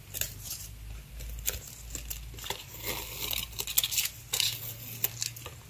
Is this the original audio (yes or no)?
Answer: yes